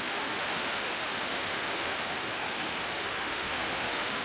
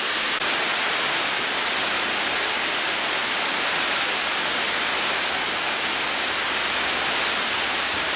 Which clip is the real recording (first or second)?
second